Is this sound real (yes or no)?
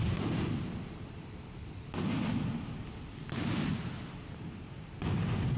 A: yes